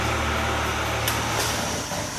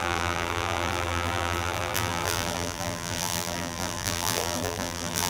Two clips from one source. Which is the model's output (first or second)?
second